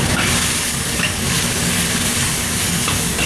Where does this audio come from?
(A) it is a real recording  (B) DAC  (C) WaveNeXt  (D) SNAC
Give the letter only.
B